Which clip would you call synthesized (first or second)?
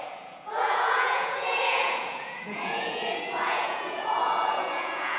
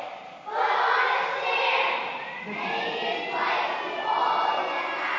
first